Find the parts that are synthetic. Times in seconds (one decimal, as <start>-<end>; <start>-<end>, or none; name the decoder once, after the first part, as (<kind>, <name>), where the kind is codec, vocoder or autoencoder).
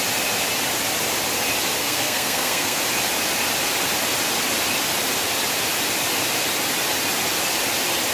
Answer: 1.8-2.8 (codec, SNAC)